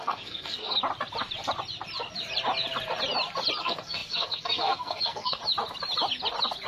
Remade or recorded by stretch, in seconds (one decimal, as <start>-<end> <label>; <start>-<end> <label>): 0.0-0.8 remade; 0.8-3.6 recorded; 3.6-5.4 remade; 5.4-6.7 recorded